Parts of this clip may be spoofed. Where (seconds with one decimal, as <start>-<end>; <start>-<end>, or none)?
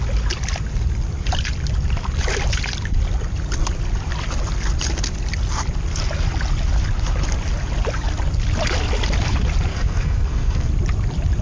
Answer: 9.7-10.7